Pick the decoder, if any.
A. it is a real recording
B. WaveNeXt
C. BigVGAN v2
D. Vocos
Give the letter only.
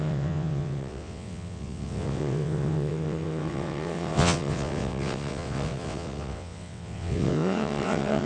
B